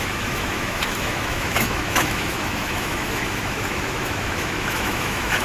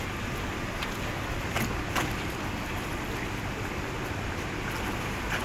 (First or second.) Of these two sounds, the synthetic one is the first